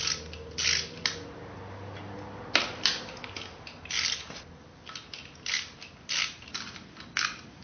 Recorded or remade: recorded